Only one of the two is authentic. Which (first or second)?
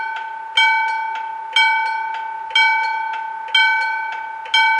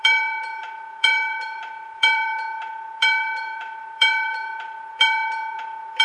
first